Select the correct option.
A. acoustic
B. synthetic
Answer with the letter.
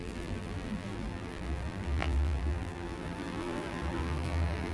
B